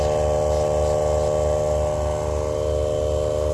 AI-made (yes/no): no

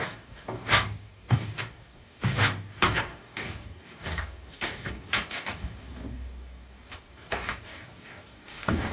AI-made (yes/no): yes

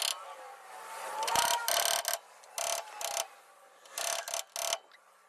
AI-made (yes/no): no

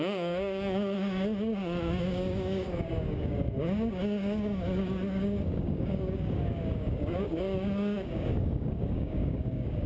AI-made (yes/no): yes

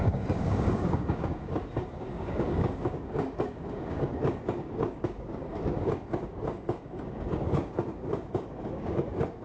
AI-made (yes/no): yes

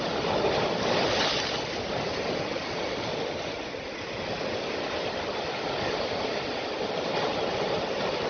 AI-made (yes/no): no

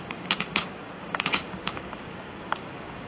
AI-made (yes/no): yes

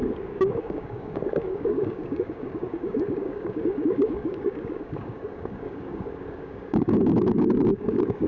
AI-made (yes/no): yes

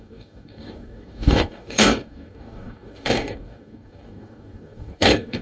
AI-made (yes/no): yes